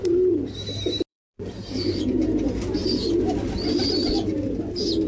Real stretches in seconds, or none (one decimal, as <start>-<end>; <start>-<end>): 0.0-1.1; 2.3-5.1